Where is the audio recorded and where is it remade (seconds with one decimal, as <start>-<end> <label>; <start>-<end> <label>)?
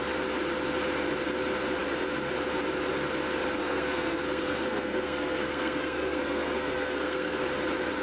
0.0-3.6 recorded; 3.6-7.4 remade; 7.4-8.0 recorded